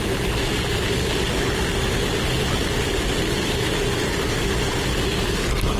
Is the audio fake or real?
real